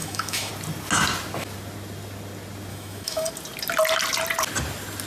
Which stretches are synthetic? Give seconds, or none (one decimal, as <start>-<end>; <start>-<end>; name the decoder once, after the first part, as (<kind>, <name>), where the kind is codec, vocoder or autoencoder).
0.0-0.5 (autoencoder, DAC-VAE); 2.7-3.3